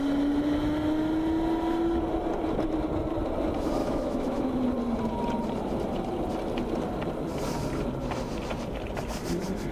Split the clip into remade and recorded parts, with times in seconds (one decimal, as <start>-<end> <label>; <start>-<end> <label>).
0.0-3.8 recorded; 3.8-4.6 remade; 4.6-9.7 recorded